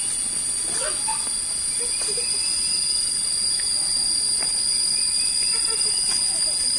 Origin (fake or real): real